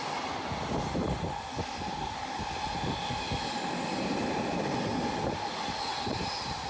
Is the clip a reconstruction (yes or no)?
no